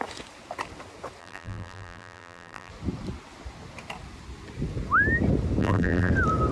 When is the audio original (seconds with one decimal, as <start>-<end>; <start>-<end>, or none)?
0.0-1.2; 2.7-5.6; 6.1-6.5